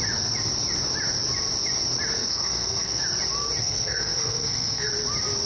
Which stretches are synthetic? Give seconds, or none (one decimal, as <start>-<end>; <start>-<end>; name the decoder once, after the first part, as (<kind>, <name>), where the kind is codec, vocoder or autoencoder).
2.2-3.0 (codec, SNAC); 3.6-4.9